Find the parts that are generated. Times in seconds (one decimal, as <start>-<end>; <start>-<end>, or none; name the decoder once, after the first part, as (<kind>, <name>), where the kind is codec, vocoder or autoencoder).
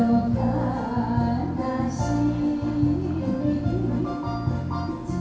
none